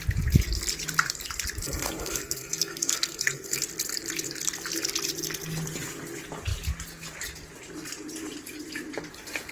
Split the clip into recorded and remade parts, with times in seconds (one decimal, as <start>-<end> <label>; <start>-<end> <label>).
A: 0.0-1.6 recorded; 1.6-3.6 remade; 3.6-9.5 recorded